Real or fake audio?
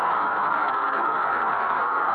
fake